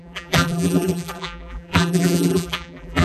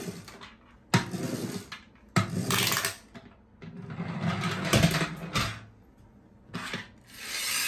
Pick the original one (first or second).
second